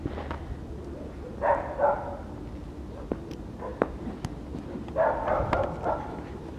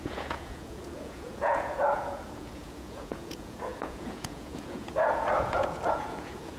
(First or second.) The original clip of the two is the first